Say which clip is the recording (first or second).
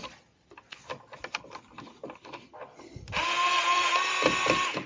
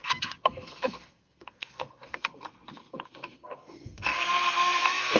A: first